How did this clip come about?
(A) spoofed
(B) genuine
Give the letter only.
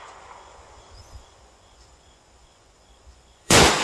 A